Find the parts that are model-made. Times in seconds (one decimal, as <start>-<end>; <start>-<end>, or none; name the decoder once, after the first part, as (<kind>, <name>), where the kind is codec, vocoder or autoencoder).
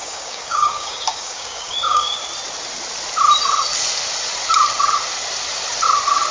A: 0.0-2.2 (codec, DAC)